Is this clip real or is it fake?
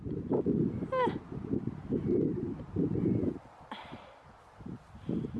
real